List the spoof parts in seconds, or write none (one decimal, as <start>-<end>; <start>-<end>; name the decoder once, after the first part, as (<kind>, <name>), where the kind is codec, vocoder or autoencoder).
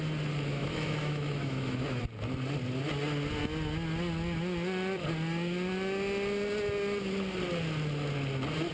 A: 0.5-2.0 (autoencoder, DAC-VAE)